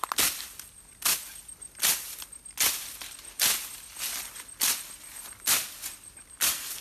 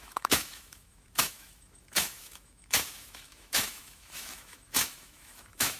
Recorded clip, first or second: first